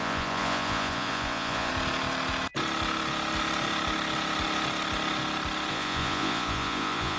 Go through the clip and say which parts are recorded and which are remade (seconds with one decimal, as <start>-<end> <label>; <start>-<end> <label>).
0.0-1.7 remade; 1.7-5.7 recorded; 5.7-7.2 remade